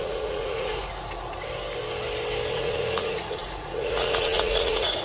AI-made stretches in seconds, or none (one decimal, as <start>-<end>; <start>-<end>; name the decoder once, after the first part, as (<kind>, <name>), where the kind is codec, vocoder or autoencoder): 0.0-0.7 (vocoder, Vocos); 2.5-5.0